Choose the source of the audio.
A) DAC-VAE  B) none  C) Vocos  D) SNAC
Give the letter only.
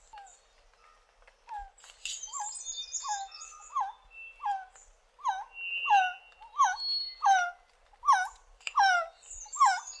B